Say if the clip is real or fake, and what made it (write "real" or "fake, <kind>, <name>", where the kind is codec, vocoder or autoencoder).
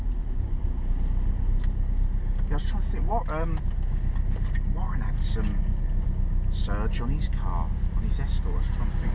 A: real